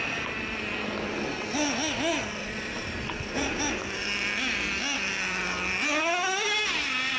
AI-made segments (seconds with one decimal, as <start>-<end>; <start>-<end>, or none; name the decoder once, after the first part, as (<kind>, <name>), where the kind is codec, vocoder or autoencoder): 2.4-3.6 (vocoder, Vocos)